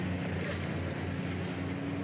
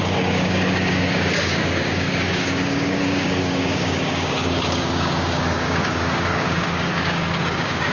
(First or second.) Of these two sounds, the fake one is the second